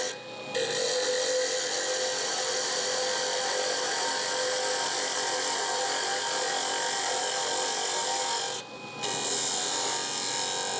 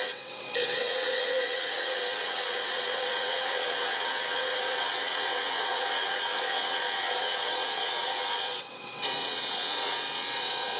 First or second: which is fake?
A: second